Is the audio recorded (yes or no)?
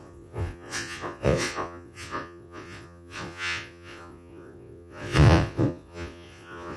no